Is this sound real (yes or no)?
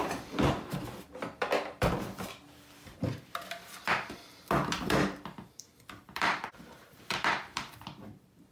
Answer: no